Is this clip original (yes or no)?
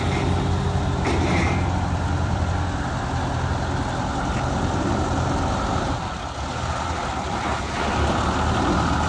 yes